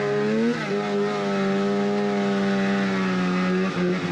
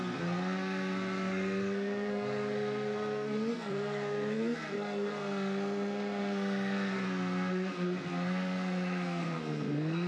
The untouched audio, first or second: first